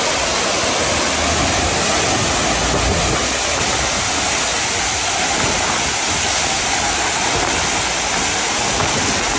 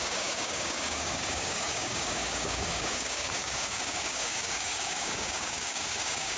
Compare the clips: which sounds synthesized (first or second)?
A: second